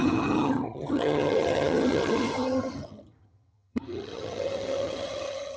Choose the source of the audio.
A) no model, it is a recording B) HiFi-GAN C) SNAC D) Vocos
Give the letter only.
B